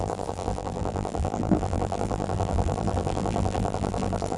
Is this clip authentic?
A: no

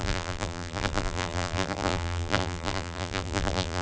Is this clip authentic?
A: no